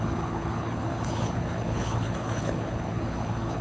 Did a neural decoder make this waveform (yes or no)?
yes